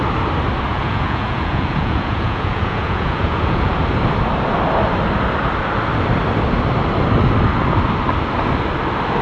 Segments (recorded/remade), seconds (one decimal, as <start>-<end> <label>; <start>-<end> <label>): 0.0-0.7 recorded; 0.7-3.8 remade; 3.8-9.2 recorded